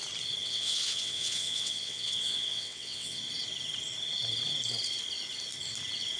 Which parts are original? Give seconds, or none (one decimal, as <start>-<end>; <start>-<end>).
0.0-0.4; 3.2-6.2